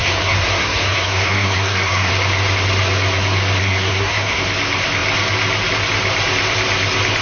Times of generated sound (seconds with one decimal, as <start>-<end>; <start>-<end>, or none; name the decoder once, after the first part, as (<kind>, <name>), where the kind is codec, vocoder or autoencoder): 0.0-2.1 (codec, SNAC); 3.6-4.4